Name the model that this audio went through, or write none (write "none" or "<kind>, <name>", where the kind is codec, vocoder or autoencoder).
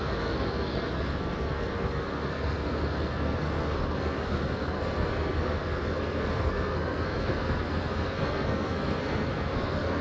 codec, SNAC